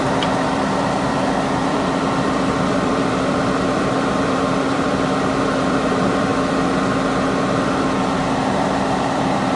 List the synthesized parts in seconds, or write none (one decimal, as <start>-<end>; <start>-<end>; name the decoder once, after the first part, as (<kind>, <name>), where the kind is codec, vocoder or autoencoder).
0.0-6.3 (vocoder, BigVGAN v2); 8.4-9.6